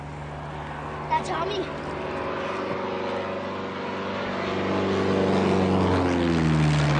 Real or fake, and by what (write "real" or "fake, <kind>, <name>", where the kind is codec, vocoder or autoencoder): real